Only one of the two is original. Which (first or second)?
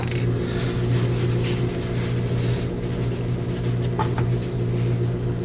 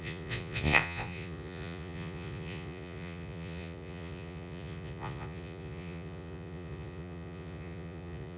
first